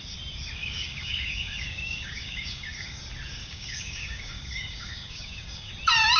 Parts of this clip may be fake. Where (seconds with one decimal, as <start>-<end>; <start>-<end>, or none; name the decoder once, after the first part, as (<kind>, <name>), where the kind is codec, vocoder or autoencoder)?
0.6-3.0 (codec, DAC); 3.4-5.7